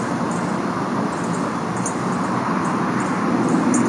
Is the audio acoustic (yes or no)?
yes